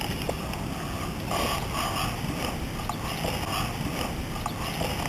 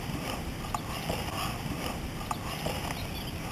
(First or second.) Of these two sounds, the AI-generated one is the second